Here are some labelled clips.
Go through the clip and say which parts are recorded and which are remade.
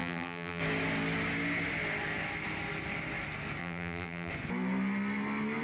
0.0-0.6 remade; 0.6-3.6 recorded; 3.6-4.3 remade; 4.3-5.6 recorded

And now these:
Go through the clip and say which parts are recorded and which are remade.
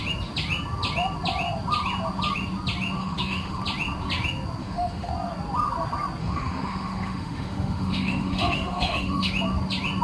0.0-3.0 recorded; 3.0-3.6 remade; 3.6-4.6 recorded; 4.6-5.1 remade; 5.1-6.2 recorded; 6.2-9.3 remade; 9.3-10.0 recorded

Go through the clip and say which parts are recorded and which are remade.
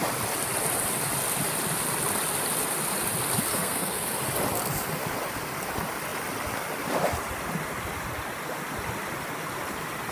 0.0-3.5 recorded; 3.5-4.1 remade; 4.1-10.1 recorded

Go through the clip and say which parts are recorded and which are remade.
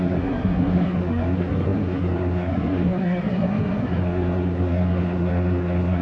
0.0-6.0 remade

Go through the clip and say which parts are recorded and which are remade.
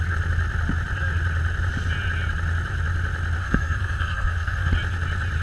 0.0-3.4 recorded; 3.4-4.7 remade; 4.7-5.4 recorded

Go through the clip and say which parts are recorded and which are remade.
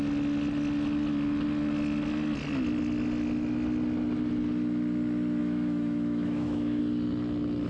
0.0-5.4 recorded; 5.4-6.8 remade; 6.8-7.7 recorded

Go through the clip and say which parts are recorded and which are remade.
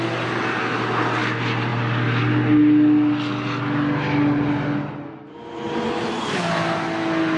0.0-7.4 recorded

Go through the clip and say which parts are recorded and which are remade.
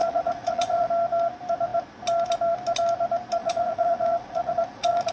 0.0-0.9 remade; 0.9-3.4 recorded; 3.4-5.1 remade